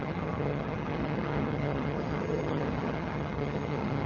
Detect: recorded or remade remade